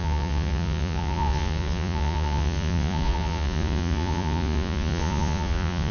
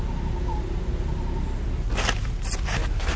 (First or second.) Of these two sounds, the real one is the second